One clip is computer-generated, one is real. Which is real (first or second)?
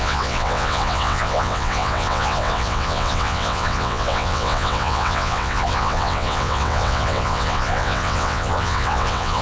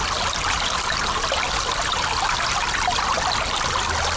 second